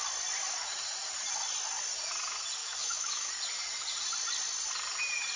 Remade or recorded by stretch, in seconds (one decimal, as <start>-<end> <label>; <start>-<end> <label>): 0.0-2.6 recorded; 2.6-3.3 remade; 3.3-5.4 recorded